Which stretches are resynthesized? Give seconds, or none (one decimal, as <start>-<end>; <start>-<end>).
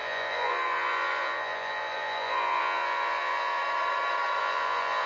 0.0-3.6; 4.4-5.1